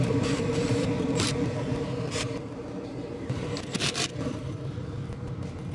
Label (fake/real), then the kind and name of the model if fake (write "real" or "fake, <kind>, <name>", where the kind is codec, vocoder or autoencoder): fake, vocoder, BigVGAN v2